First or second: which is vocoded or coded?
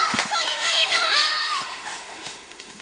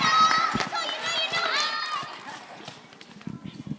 first